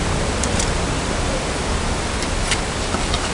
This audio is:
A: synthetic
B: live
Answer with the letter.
A